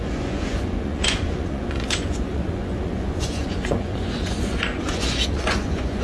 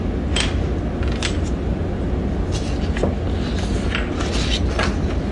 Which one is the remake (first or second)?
first